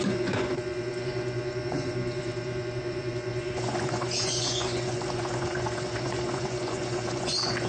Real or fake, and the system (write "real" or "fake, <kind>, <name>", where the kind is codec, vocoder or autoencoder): fake, vocoder, Vocos